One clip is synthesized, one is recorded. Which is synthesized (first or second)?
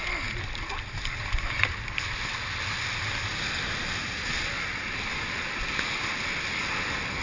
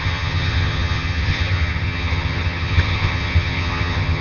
second